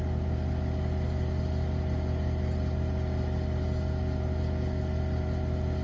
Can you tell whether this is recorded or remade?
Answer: recorded